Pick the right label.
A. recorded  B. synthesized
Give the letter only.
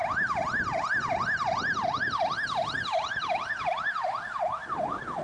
A